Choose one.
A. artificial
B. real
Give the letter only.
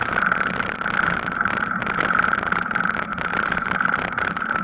B